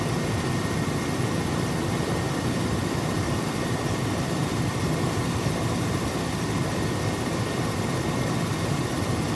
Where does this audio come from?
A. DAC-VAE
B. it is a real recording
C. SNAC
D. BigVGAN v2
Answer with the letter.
D